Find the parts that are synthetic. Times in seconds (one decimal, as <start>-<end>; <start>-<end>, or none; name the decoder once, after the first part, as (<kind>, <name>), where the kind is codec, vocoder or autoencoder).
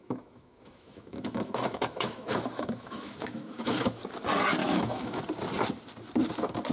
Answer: 0.0-4.0 (autoencoder, DAC-VAE); 4.6-5.2